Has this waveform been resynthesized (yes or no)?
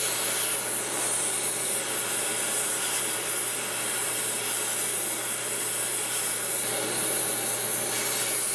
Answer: no